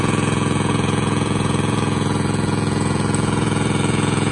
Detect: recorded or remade remade